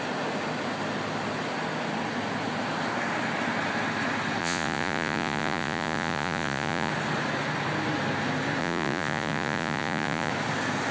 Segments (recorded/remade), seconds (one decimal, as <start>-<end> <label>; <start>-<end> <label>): 0.0-4.4 recorded; 4.4-6.9 remade; 6.9-8.6 recorded; 8.6-10.3 remade; 10.3-10.9 recorded